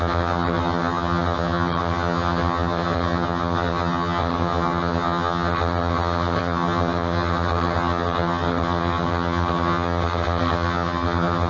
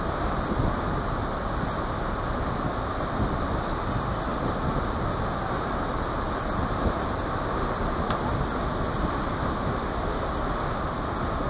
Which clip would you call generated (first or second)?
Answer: first